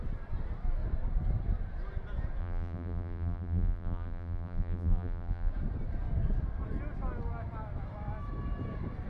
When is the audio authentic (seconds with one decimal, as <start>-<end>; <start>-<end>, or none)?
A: 0.0-2.4; 5.5-9.1